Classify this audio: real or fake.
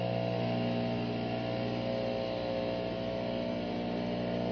real